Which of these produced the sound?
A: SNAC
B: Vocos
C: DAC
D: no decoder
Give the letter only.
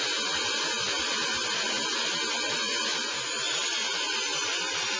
D